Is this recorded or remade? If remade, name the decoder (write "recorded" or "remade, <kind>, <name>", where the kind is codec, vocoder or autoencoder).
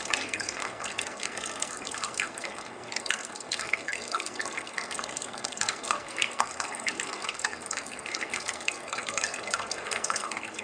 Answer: remade, codec, SNAC